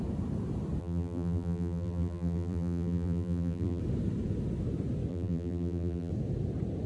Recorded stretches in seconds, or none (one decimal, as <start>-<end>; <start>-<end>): 0.0-0.8; 3.8-5.1; 6.1-6.9